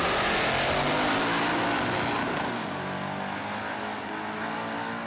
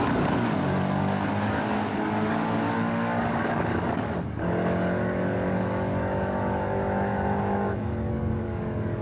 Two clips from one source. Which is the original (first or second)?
first